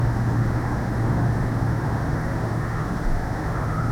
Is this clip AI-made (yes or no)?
yes